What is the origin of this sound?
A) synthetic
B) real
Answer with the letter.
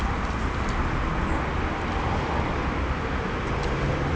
B